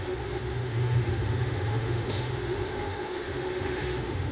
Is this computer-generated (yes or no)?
yes